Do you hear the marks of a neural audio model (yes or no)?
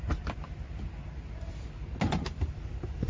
no